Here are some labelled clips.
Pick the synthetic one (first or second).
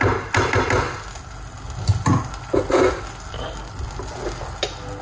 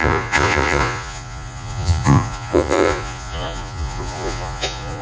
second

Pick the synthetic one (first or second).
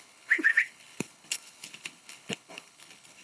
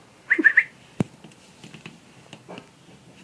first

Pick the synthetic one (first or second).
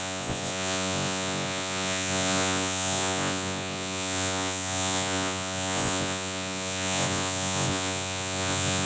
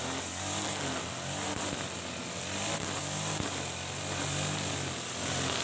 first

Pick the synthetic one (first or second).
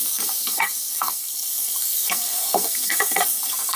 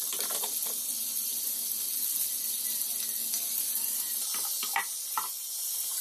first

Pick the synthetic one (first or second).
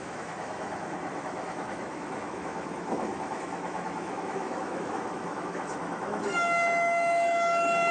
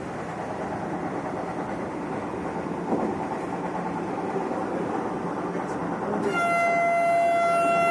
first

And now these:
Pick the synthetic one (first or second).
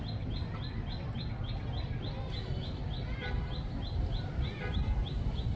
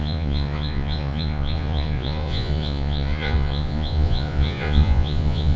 second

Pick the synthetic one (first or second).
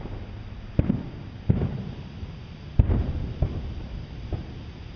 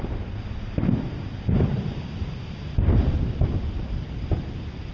second